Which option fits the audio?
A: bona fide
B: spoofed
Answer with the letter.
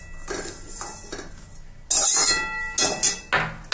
A